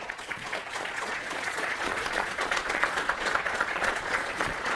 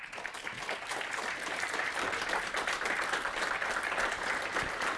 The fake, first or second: first